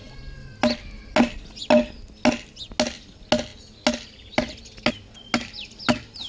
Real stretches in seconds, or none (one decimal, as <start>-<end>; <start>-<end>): 0.0-6.3